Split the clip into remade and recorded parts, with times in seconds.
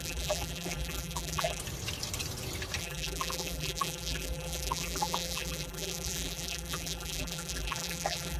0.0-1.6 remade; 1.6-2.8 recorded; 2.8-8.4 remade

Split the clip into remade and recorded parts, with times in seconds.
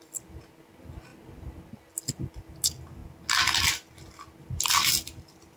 0.0-5.6 recorded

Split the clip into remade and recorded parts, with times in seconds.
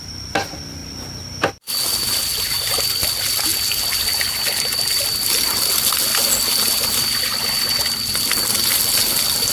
0.0-9.5 recorded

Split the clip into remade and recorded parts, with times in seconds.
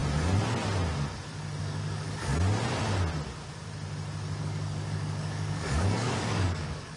0.0-1.6 recorded; 1.6-2.3 remade; 2.3-4.4 recorded; 4.4-7.0 remade